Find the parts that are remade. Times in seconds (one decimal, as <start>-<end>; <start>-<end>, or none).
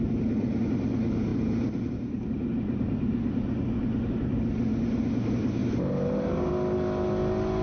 1.3-3.7; 5.6-6.5